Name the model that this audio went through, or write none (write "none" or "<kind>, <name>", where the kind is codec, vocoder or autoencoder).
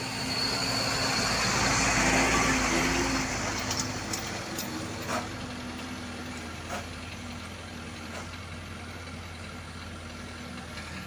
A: none